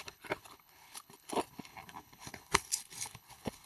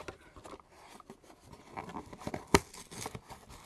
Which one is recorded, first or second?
second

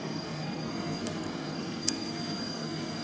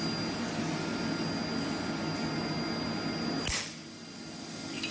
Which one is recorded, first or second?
second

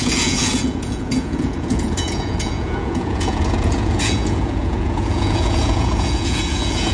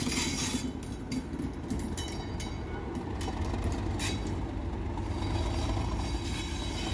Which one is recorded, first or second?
second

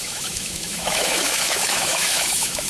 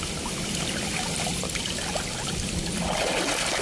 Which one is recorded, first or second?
second